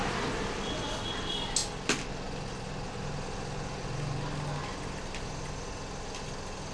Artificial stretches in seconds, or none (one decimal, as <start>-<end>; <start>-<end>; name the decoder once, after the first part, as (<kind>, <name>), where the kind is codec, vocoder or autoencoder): none